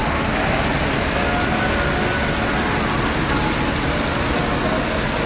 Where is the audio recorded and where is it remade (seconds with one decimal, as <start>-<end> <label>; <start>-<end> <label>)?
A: 0.0-5.3 recorded